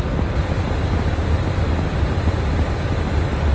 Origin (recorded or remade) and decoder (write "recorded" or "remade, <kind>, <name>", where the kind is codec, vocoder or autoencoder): recorded